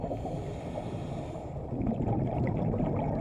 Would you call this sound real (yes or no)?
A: yes